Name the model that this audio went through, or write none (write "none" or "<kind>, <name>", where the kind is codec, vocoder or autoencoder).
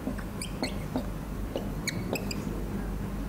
none